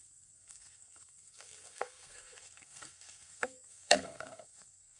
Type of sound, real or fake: fake